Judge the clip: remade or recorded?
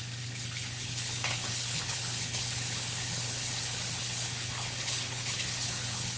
remade